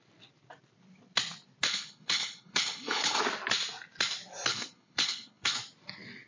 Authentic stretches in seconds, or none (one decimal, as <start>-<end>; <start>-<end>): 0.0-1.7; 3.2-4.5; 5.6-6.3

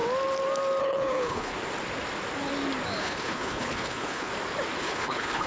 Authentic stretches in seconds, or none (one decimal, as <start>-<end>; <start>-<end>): 0.0-0.8; 1.5-3.0; 4.3-4.8

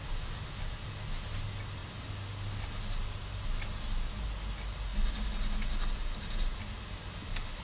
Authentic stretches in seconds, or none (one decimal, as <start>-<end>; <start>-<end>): 0.0-7.6